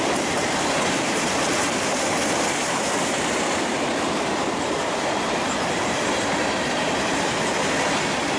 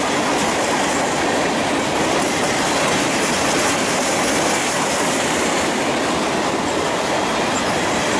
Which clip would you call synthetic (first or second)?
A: first